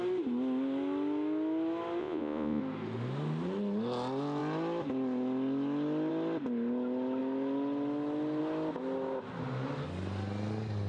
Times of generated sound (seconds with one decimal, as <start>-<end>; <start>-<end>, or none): 2.0-2.6